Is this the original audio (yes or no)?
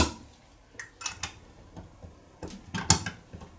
yes